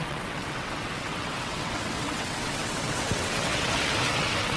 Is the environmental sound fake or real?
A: fake